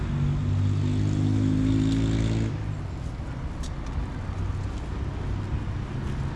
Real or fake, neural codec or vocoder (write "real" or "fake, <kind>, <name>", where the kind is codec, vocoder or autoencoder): real